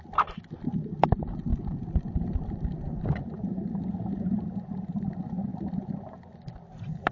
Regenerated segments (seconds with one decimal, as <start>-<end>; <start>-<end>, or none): none